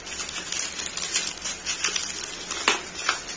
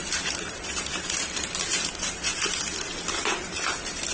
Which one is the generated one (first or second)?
second